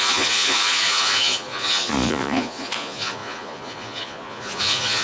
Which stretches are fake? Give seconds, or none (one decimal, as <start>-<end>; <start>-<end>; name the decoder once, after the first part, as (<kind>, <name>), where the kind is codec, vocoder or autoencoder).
0.0-5.0 (vocoder, Vocos)